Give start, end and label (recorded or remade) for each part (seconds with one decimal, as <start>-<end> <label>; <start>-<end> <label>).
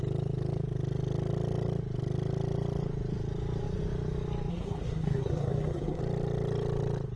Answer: 0.0-4.5 recorded; 4.5-6.0 remade; 6.0-7.2 recorded